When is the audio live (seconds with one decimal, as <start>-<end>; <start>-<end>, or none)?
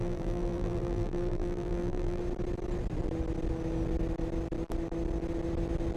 2.2-6.0